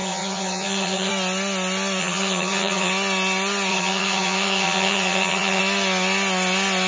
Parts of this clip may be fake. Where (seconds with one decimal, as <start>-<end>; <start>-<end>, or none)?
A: 0.0-1.1; 2.0-2.9; 3.7-5.6